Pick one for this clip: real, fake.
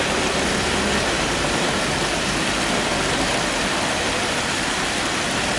real